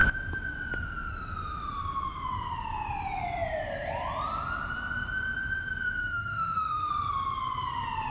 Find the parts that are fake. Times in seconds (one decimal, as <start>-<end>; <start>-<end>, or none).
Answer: 6.0-6.9